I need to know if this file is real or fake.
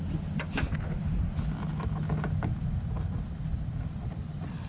real